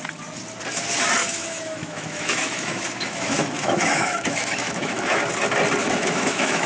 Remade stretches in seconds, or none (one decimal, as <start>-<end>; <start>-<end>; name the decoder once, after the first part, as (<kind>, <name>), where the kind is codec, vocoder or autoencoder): 1.2-5.2 (autoencoder, DAC-VAE); 5.8-6.7